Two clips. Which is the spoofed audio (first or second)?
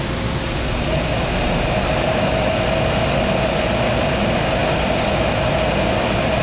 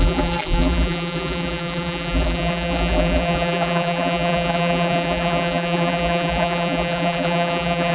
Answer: second